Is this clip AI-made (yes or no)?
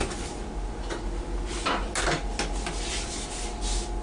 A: no